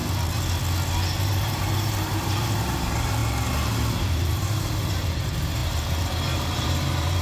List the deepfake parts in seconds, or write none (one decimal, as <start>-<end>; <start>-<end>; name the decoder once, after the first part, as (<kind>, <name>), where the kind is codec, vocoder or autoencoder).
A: 1.2-3.2 (vocoder, BigVGAN v2); 3.9-7.2